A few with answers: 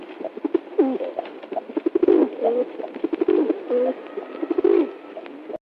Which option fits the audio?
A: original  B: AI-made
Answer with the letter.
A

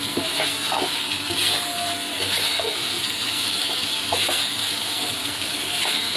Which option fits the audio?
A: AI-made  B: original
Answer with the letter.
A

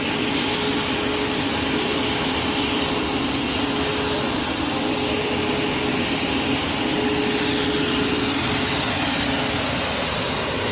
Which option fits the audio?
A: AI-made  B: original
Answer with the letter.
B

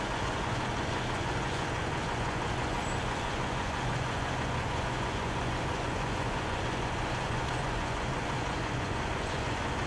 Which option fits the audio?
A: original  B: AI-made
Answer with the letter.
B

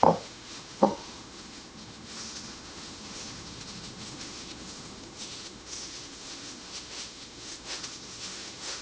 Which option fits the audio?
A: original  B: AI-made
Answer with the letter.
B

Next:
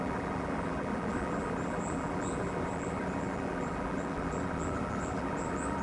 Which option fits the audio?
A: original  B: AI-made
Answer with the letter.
B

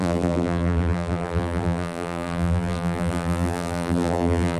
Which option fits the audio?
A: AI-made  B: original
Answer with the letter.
A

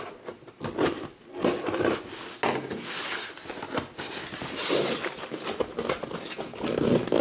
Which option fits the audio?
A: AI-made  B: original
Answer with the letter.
B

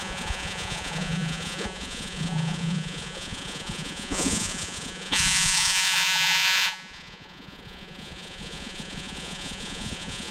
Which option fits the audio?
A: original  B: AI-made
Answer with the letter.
B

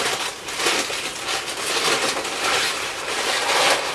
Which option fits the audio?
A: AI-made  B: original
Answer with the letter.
B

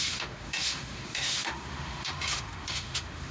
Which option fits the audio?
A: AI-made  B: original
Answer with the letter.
A